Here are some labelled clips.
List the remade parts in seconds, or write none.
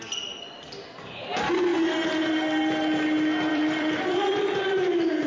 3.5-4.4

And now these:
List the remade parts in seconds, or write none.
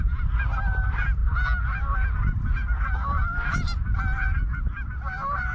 none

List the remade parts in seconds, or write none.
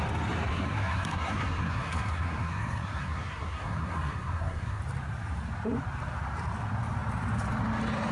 0.5-4.8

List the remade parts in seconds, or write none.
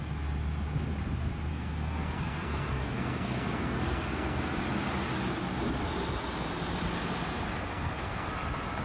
1.5-4.4; 7.7-8.3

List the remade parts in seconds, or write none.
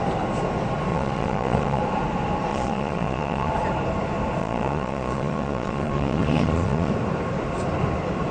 0.9-1.8; 2.5-3.5; 4.4-6.9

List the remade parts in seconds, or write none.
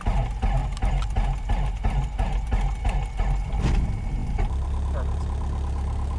4.2-5.2